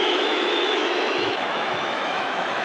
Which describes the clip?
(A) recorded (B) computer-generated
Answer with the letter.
B